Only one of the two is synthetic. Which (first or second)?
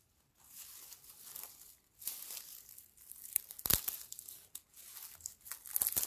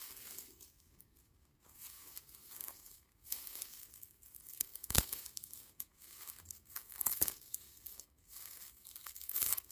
second